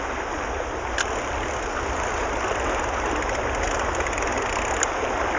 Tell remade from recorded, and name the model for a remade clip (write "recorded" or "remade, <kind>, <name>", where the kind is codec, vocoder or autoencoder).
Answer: recorded